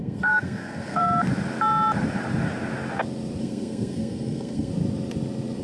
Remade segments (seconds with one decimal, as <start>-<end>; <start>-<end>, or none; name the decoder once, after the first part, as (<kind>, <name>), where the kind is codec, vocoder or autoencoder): 0.0-1.0 (codec, SNAC); 3.4-4.7